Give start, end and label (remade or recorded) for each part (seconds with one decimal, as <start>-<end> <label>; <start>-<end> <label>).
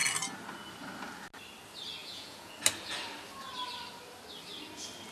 0.0-2.0 recorded; 2.0-2.5 remade; 2.5-5.1 recorded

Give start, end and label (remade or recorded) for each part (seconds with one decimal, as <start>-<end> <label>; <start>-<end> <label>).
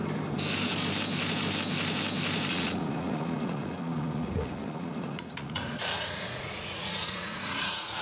0.0-2.5 recorded; 2.5-8.0 remade